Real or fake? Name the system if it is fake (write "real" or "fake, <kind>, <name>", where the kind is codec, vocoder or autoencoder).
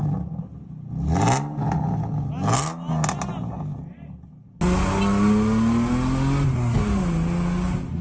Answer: real